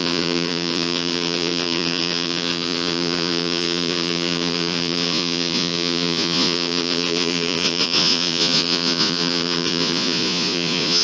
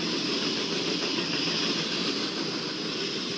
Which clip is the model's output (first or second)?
first